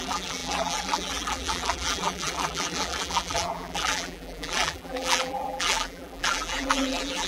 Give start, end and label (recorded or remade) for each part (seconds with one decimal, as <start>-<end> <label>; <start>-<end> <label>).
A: 0.0-7.3 remade